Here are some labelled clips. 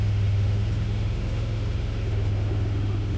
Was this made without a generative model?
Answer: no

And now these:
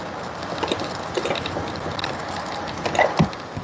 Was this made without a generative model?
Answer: yes